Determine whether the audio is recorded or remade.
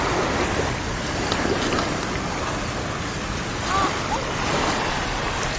recorded